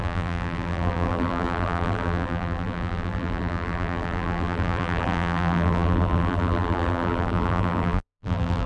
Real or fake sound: fake